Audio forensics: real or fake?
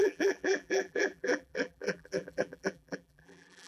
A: fake